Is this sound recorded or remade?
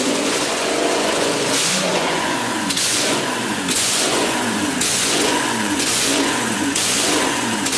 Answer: remade